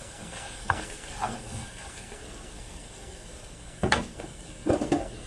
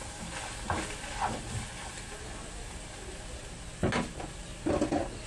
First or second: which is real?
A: second